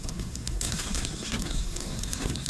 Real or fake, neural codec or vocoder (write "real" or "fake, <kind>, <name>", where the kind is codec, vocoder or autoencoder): fake, codec, SNAC